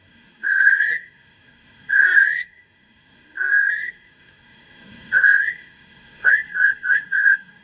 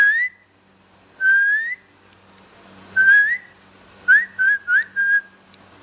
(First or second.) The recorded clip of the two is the second